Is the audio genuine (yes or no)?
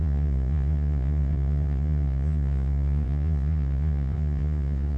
no